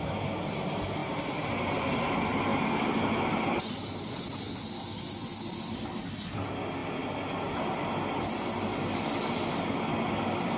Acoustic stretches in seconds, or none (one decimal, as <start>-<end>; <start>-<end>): 0.0-1.0; 2.1-10.6